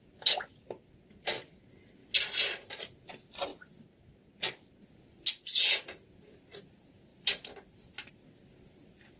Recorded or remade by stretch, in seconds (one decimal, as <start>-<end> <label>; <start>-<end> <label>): 0.0-7.1 recorded; 7.1-8.1 remade; 8.1-9.2 recorded